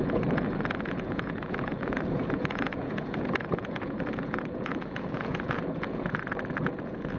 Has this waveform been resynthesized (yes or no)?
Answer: yes